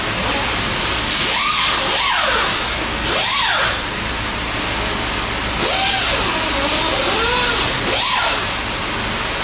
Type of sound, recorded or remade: recorded